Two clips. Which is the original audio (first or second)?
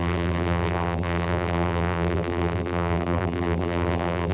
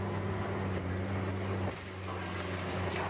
second